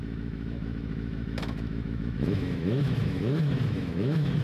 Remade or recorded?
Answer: remade